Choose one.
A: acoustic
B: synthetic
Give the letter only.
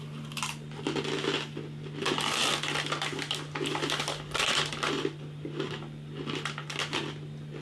A